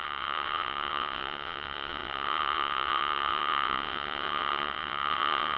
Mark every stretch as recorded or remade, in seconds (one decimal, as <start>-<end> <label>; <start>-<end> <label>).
0.0-5.6 remade

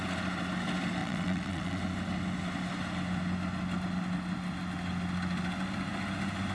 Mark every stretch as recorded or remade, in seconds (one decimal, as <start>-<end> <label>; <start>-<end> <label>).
0.0-1.0 recorded; 1.0-1.8 remade; 1.8-6.5 recorded

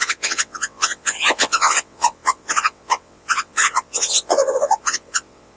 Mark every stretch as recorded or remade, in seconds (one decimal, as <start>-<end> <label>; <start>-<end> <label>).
0.0-5.6 remade

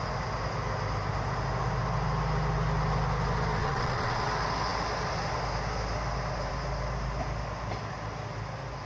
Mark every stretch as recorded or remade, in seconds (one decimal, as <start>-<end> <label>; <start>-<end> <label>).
0.0-3.6 recorded; 3.6-4.2 remade; 4.2-8.9 recorded